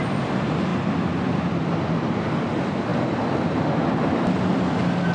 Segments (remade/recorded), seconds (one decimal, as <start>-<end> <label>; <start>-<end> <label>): 0.0-5.1 recorded